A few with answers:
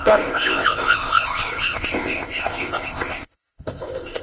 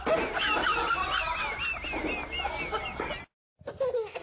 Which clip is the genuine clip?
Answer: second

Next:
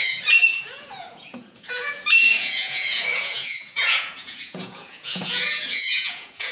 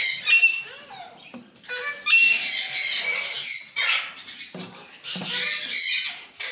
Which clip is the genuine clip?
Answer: second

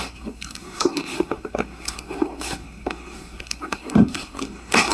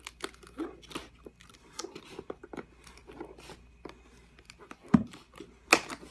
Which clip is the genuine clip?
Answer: second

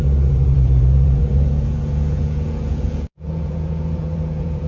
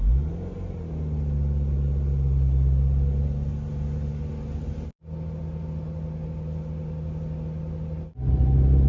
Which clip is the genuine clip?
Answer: second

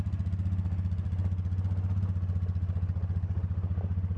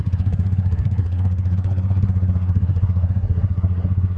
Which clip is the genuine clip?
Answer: first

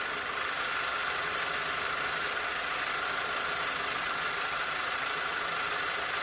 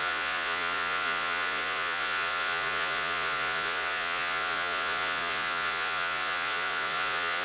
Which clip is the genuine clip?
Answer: first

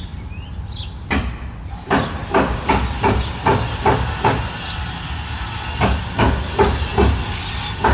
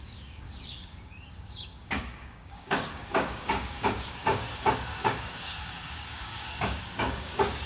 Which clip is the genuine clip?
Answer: first